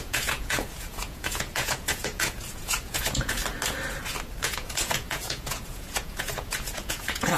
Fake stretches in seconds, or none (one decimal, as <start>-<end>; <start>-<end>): 0.0-3.4; 4.4-7.4